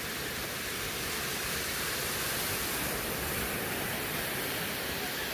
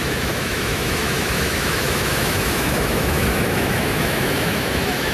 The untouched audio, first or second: first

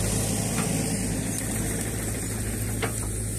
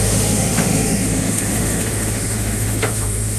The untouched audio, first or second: first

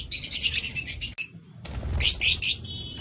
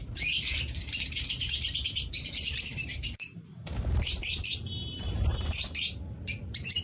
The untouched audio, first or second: first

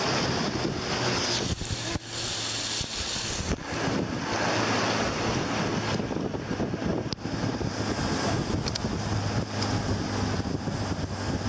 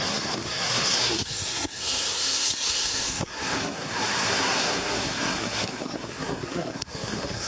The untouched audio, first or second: first